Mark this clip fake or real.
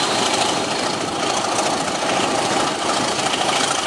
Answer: fake